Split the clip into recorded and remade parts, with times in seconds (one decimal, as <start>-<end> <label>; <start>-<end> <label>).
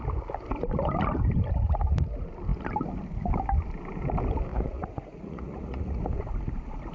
0.0-4.5 recorded; 4.5-6.0 remade; 6.0-6.9 recorded